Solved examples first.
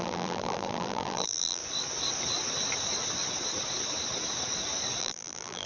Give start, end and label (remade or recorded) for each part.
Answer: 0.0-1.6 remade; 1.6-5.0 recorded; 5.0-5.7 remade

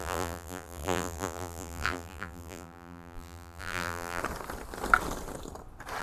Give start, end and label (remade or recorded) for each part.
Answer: 0.0-4.2 remade; 4.2-6.0 recorded